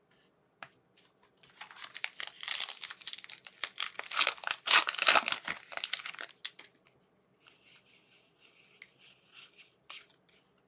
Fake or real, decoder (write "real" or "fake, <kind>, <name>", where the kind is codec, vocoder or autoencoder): real